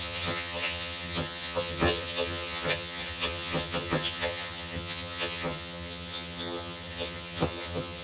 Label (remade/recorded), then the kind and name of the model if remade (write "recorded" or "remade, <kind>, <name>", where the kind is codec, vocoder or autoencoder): remade, vocoder, HiFi-GAN